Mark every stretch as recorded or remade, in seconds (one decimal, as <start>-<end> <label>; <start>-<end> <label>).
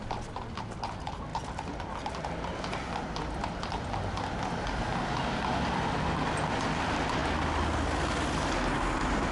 0.0-9.3 recorded